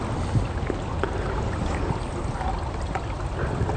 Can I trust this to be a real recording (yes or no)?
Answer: yes